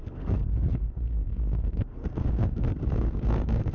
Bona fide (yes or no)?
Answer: no